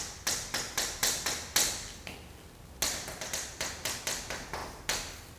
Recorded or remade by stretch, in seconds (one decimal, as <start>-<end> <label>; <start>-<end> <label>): 0.0-5.4 recorded